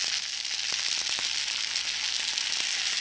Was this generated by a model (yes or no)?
no